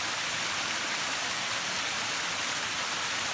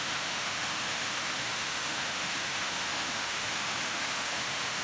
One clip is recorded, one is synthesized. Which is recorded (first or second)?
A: first